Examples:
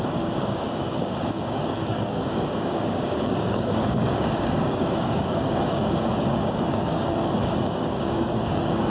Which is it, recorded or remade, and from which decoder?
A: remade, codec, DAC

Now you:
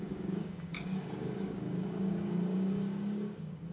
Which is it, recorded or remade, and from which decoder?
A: remade, codec, DAC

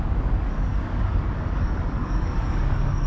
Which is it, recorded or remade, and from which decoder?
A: remade, codec, DAC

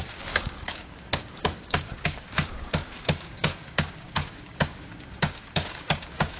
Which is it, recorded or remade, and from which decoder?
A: remade, codec, DAC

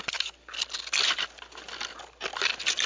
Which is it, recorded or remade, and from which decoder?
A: recorded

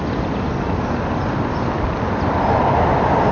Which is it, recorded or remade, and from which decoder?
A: recorded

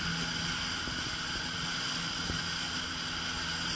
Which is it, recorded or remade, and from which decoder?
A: recorded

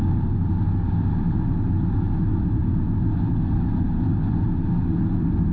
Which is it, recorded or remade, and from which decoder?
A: recorded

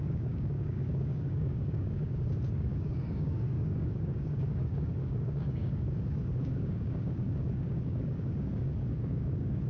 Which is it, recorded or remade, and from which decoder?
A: remade, codec, DAC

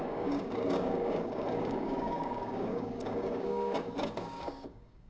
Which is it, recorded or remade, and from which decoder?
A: remade, codec, DAC